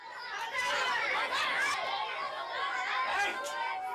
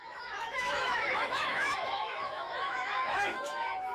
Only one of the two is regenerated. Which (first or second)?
second